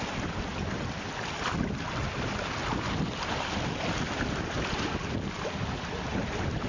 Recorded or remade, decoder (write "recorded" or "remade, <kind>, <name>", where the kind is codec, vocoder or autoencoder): recorded